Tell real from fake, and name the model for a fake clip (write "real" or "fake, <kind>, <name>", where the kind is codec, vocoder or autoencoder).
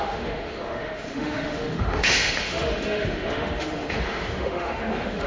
fake, autoencoder, DAC-VAE